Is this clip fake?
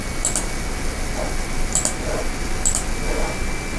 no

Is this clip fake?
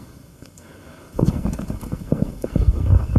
yes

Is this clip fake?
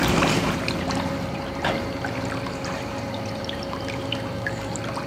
yes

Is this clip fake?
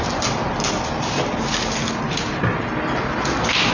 no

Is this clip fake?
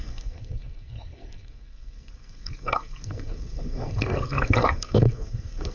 yes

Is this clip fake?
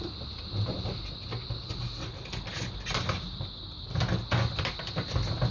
no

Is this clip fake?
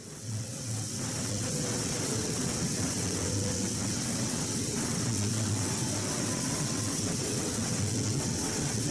yes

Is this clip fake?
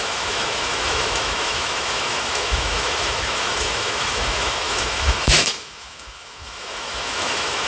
yes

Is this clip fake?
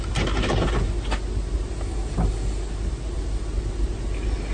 no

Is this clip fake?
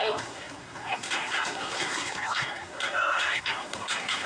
yes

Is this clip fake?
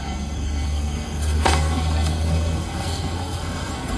yes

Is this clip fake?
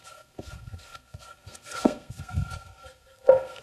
yes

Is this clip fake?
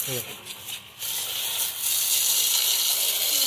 no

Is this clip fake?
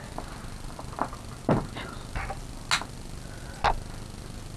no